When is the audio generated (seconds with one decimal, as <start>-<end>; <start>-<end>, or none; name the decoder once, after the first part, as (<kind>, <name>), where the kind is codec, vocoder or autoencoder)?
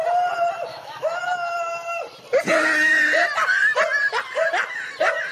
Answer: 0.7-1.2 (autoencoder, DAC-VAE)